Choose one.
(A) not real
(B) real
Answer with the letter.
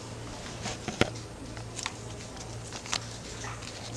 B